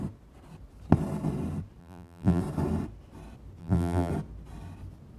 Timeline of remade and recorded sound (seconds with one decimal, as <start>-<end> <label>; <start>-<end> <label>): 0.0-1.8 recorded; 1.8-2.4 remade; 2.4-3.6 recorded; 3.6-4.1 remade; 4.1-5.2 recorded